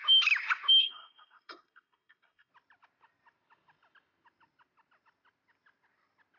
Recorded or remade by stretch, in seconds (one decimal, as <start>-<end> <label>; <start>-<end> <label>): 0.0-0.8 recorded; 0.8-2.5 remade; 2.5-6.4 recorded